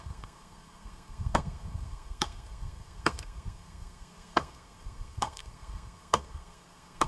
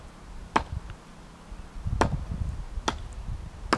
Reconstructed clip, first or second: first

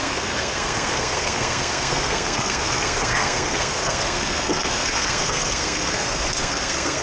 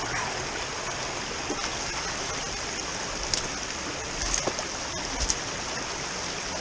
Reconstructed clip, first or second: first